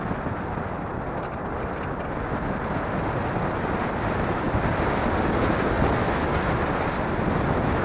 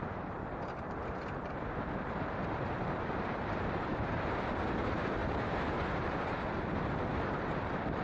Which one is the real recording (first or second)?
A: first